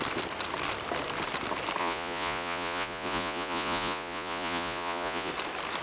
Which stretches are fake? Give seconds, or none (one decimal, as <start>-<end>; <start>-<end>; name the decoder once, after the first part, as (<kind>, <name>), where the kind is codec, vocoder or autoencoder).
1.8-5.3 (vocoder, Vocos)